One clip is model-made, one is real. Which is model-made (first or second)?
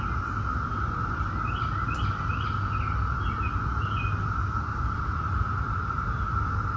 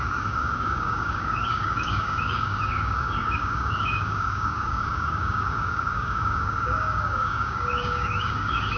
second